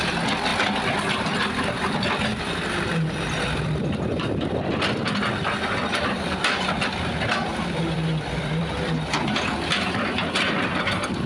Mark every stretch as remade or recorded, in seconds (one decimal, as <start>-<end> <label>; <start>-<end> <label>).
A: 0.0-0.5 recorded; 0.5-5.3 remade; 5.3-5.8 recorded; 5.8-6.4 remade; 6.4-7.5 recorded; 7.5-10.5 remade; 10.5-11.3 recorded